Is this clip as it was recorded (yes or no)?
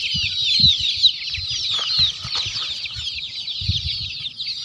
yes